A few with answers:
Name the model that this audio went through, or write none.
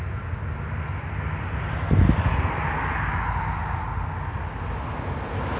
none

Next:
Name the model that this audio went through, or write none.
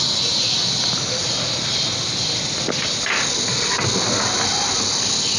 none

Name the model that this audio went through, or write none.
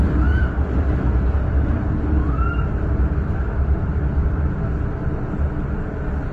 none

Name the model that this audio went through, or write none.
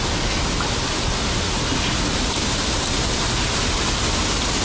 none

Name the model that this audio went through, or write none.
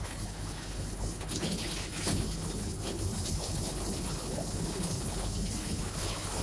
codec, HILCodec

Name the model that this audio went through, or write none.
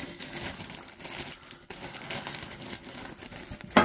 none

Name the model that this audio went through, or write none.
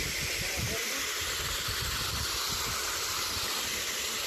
none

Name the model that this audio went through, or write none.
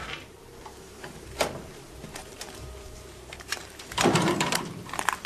vocoder, BigVGAN v2